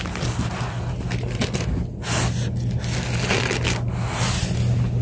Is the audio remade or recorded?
recorded